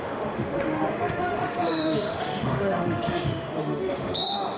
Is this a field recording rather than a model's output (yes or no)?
no